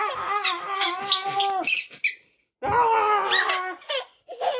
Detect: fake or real real